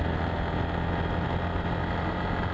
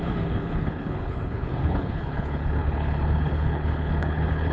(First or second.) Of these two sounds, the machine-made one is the second